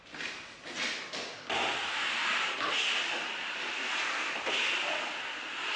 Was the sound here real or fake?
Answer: real